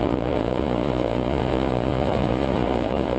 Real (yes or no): no